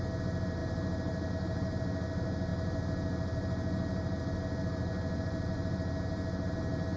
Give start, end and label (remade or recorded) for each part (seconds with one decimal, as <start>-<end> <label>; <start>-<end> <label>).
0.0-7.0 recorded